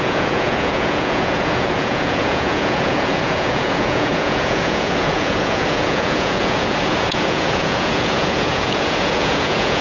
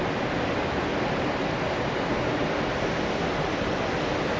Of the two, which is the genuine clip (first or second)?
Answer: second